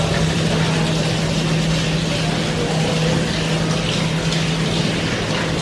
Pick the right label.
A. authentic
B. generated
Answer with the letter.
A